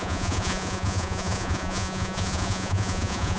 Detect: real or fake fake